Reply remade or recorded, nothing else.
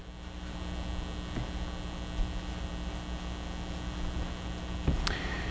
recorded